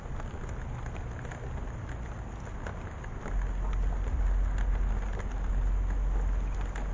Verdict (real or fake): real